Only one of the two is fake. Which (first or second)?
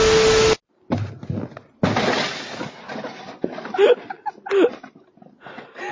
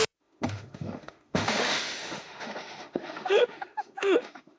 second